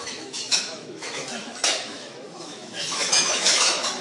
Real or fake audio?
fake